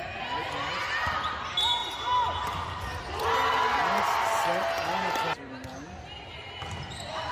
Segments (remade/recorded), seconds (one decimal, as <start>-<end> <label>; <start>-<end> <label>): 0.0-7.3 recorded